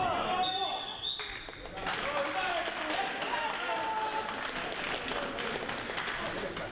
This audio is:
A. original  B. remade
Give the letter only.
A